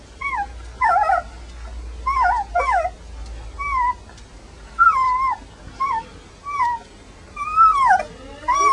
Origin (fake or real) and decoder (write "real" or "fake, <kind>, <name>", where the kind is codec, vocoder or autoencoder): real